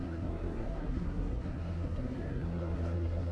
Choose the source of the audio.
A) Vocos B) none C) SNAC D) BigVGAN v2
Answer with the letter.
C